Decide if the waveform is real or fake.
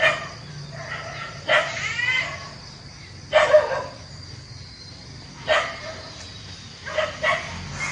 real